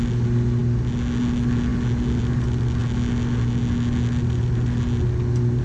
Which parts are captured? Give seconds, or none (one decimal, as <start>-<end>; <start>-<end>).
0.0-5.6